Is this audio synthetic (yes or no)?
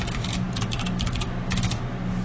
no